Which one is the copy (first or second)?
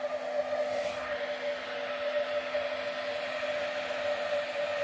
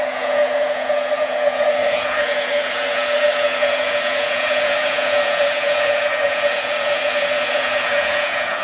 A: second